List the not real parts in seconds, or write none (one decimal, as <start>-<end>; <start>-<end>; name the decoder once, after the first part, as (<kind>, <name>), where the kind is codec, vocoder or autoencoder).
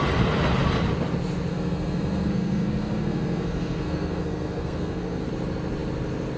1.5-5.3 (codec, SNAC)